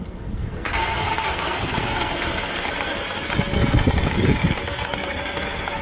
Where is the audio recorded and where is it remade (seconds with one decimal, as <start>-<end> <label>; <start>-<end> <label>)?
0.0-5.8 remade